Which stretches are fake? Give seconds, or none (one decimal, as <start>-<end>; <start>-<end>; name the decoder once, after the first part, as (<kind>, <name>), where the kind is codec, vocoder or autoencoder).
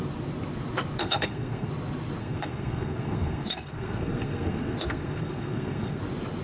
1.0-1.7 (codec, SNAC); 2.2-6.0